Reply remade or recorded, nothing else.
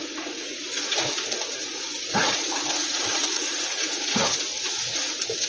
remade